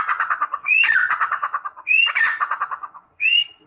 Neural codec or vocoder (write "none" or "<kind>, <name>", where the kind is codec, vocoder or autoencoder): vocoder, Vocos